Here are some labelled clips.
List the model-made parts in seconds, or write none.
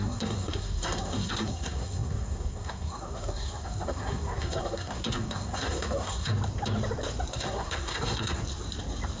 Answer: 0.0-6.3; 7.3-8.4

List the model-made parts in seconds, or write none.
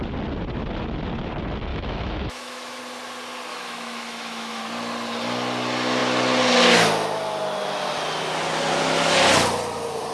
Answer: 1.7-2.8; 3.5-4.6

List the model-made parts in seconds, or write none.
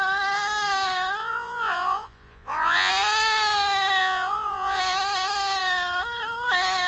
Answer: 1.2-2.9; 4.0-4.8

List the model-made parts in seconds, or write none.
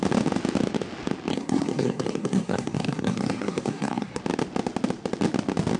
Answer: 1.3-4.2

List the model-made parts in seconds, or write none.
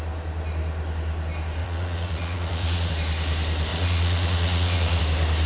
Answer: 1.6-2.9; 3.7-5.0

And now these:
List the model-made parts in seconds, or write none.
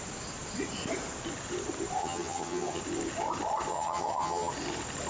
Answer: 2.0-2.8; 3.7-4.5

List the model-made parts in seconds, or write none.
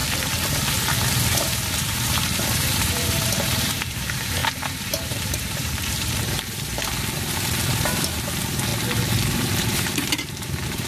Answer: 1.4-8.7; 9.3-10.9